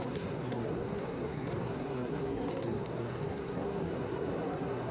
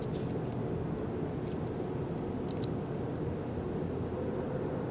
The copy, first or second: first